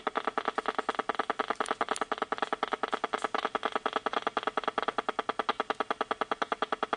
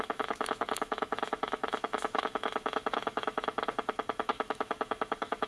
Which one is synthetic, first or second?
second